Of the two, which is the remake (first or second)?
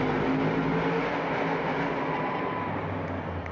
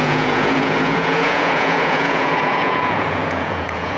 second